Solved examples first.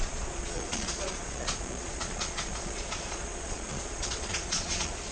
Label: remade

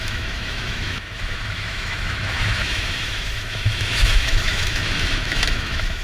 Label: remade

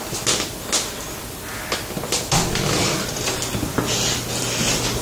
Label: recorded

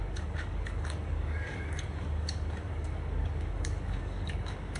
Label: remade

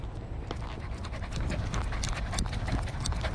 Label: remade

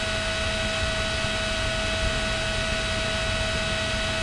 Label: recorded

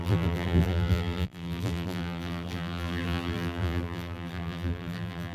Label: remade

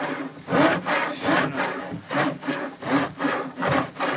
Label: recorded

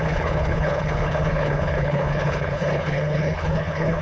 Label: remade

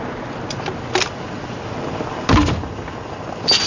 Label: recorded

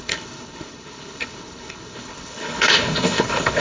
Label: remade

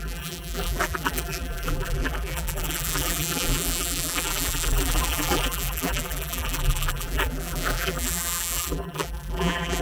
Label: remade